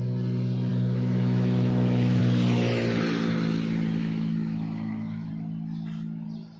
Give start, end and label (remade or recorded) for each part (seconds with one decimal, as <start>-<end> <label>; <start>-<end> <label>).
0.0-0.7 recorded; 0.7-2.2 remade; 2.2-4.0 recorded; 4.0-5.3 remade; 5.3-6.6 recorded